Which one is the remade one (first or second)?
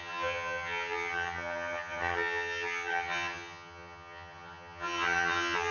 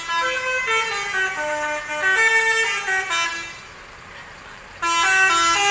first